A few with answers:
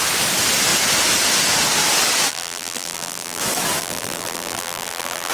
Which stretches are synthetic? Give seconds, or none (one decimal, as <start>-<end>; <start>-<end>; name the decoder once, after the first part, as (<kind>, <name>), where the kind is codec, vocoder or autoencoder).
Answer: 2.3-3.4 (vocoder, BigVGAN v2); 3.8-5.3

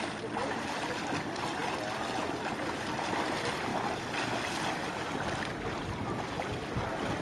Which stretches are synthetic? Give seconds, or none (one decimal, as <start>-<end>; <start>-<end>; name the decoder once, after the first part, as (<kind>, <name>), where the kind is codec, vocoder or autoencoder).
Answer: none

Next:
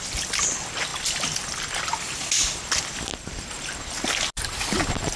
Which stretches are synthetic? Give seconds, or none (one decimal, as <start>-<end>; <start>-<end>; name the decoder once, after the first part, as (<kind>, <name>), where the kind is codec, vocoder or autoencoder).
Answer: none

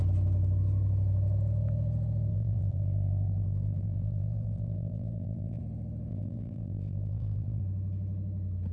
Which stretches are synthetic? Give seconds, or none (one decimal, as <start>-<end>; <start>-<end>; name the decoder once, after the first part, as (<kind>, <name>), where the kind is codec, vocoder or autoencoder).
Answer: 2.3-5.6 (vocoder, BigVGAN v2); 6.1-7.6

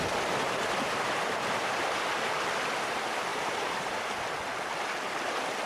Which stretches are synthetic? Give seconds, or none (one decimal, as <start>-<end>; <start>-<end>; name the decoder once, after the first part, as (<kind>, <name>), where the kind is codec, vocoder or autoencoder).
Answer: 3.3-4.0 (vocoder, BigVGAN v2)

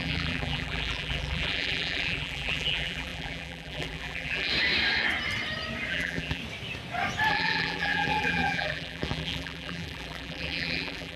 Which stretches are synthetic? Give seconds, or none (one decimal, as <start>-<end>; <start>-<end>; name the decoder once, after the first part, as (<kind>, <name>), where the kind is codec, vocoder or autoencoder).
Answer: 0.0-4.5 (vocoder, BigVGAN v2); 5.9-6.4; 7.3-11.2

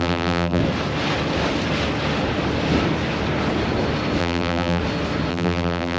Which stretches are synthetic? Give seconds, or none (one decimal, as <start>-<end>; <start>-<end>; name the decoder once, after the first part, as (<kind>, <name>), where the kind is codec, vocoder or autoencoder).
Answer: 0.0-0.6 (vocoder, BigVGAN v2); 4.2-4.8; 5.3-6.0

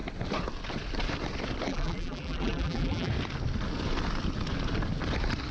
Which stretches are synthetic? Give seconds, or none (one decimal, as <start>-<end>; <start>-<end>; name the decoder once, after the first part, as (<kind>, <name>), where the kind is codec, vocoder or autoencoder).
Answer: 1.7-3.1 (vocoder, BigVGAN v2)